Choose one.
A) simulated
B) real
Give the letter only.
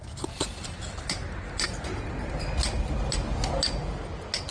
B